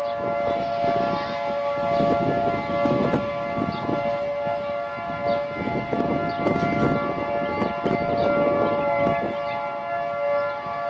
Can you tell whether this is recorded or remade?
recorded